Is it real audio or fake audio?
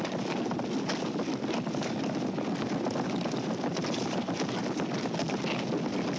real